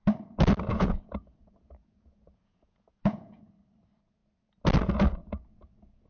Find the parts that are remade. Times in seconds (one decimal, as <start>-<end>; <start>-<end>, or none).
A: 0.7-3.4; 5.2-6.1